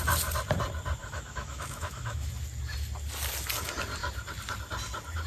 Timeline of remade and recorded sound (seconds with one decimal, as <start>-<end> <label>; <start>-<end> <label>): 0.0-1.0 recorded; 1.0-2.3 remade; 2.3-5.3 recorded